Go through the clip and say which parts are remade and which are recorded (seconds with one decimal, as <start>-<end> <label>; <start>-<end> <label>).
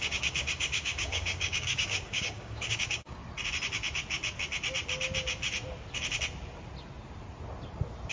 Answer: 0.0-3.2 remade; 3.2-8.1 recorded